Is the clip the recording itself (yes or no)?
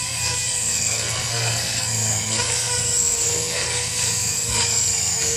no